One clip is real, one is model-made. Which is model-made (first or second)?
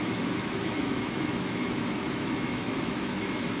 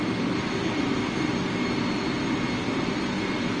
first